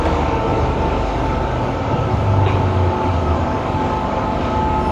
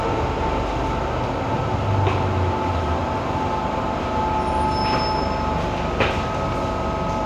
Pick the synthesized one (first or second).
first